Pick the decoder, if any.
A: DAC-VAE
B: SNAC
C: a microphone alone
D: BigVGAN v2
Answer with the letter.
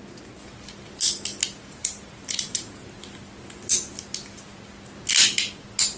C